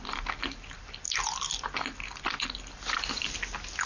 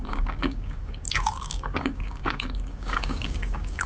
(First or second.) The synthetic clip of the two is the second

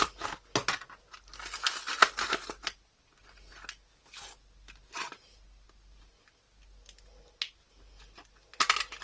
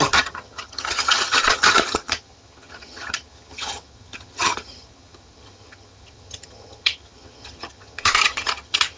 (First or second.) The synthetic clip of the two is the second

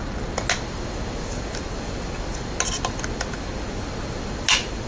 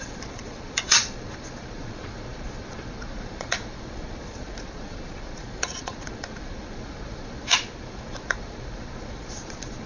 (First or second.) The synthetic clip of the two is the second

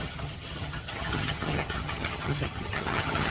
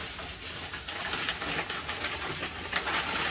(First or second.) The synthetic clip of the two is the first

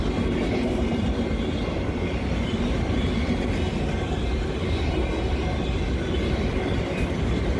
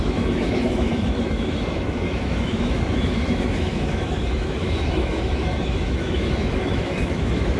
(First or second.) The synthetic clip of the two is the second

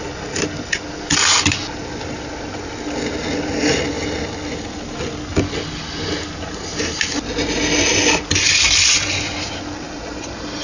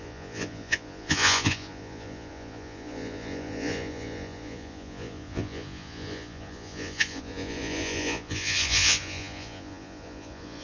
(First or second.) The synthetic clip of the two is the second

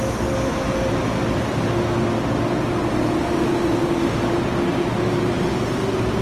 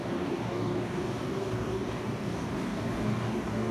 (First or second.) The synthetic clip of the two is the second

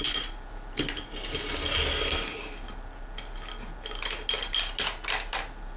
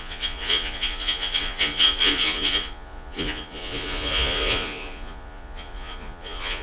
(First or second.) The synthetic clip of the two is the second